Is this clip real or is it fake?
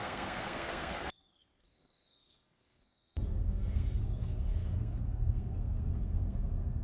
fake